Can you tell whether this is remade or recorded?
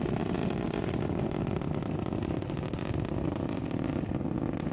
recorded